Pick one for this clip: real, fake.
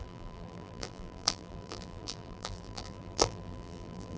fake